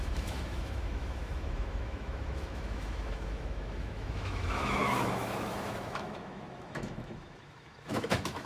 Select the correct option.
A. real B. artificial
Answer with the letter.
B